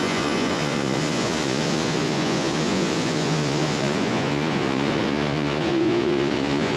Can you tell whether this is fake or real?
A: fake